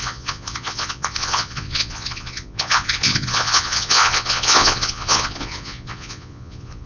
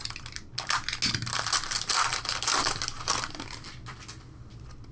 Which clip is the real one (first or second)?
second